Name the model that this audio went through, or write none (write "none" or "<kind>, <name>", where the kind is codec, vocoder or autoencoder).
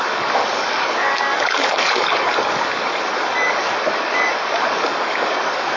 codec, DAC